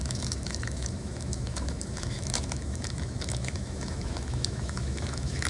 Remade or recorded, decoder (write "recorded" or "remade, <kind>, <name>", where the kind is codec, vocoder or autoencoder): remade, autoencoder, DAC-VAE